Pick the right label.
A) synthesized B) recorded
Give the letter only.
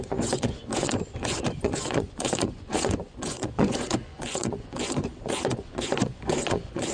A